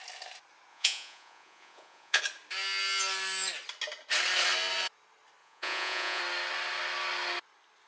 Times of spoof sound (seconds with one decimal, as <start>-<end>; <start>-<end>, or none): 0.7-2.2; 5.4-6.2